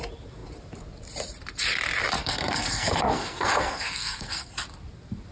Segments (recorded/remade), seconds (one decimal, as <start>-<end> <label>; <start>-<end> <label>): 0.0-2.2 recorded; 2.2-4.5 remade; 4.5-5.3 recorded